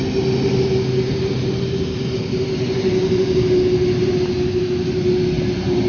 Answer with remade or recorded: recorded